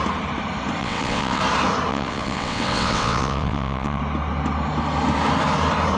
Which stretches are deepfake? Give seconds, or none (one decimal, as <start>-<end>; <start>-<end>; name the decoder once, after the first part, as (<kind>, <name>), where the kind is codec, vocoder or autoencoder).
0.8-1.4 (vocoder, WaveNeXt); 1.9-4.0